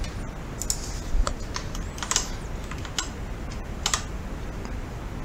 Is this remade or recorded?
recorded